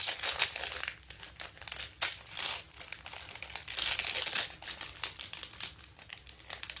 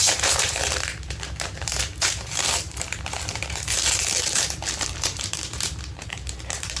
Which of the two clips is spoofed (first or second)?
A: second